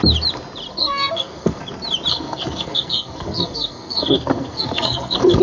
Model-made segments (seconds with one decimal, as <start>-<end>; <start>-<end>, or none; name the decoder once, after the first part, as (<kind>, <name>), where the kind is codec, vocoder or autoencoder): 0.7-1.6 (codec, SNAC); 2.1-5.4